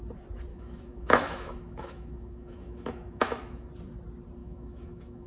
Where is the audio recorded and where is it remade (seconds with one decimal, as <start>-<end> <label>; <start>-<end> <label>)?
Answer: 0.0-0.5 recorded; 0.5-3.7 remade; 3.7-4.4 recorded; 4.4-5.3 remade